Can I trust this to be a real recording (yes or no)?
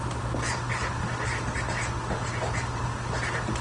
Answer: yes